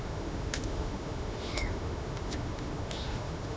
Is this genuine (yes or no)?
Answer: no